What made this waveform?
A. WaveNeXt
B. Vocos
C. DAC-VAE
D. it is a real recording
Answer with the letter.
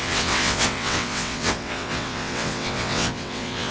A